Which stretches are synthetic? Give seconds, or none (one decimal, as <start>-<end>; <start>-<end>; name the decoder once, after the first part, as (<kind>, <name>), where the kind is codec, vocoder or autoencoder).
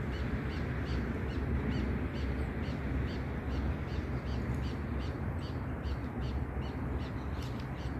none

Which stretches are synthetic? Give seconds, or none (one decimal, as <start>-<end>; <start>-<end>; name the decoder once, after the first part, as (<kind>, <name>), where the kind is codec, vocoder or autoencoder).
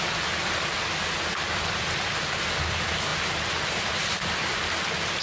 3.1-4.3 (vocoder, BigVGAN v2)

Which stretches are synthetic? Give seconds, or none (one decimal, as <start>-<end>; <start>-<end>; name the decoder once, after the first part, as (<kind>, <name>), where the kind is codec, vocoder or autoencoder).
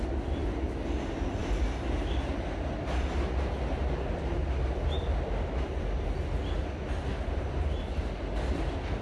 7.1-8.2 (vocoder, BigVGAN v2)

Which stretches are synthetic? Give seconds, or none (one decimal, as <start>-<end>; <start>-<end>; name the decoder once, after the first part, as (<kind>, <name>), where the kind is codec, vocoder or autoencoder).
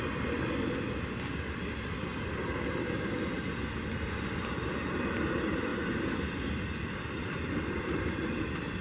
none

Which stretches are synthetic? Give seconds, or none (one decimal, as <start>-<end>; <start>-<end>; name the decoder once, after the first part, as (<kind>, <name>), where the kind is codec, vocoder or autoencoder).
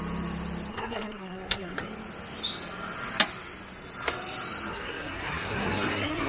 0.7-1.9 (codec, SNAC); 4.7-6.3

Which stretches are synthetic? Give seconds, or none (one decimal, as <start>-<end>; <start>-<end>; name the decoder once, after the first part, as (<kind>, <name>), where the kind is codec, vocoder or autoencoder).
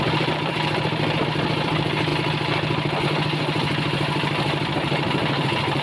0.0-2.1 (vocoder, BigVGAN v2); 3.0-5.8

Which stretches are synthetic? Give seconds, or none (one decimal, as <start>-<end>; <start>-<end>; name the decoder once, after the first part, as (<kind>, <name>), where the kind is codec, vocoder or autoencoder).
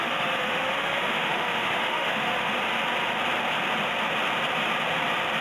0.0-2.5 (autoencoder, DAC-VAE)